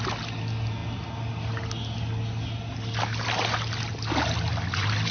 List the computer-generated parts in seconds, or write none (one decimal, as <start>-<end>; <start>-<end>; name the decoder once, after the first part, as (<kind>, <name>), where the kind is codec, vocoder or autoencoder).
none